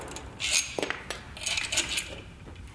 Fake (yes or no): no